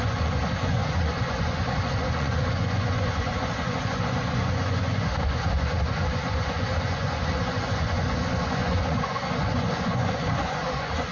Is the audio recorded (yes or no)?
no